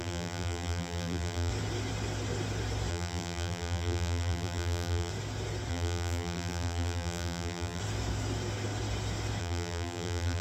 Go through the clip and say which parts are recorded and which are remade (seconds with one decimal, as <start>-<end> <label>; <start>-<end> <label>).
0.0-1.5 remade; 1.5-2.9 recorded; 2.9-5.1 remade; 5.1-5.7 recorded; 5.7-7.8 remade; 7.8-9.4 recorded; 9.4-10.4 remade